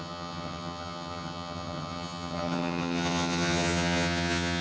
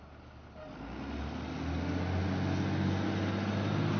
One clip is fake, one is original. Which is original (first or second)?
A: second